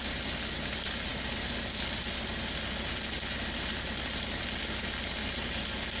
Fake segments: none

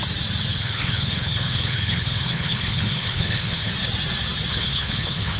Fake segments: 0.5-3.7 (codec, HILCodec); 4.5-5.4

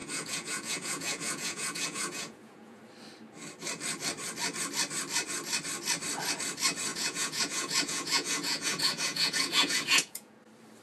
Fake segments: 0.0-2.8 (vocoder, Vocos); 6.9-10.4

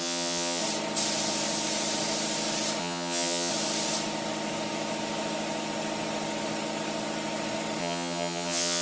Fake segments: 0.0-0.6 (vocoder, HiFi-GAN); 2.8-3.5; 7.8-8.8

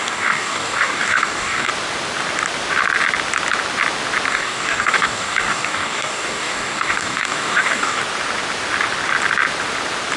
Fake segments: 0.0-1.7 (codec, DAC); 4.3-8.0

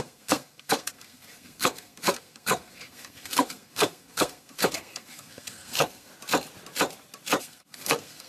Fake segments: 0.0-6.1 (codec, SNAC); 7.4-8.3

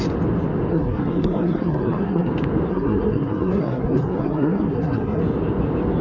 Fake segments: 0.7-2.3 (codec, SNAC); 2.7-5.2